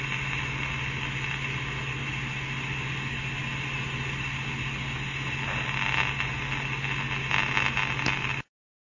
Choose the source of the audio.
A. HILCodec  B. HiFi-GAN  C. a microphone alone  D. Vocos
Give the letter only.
C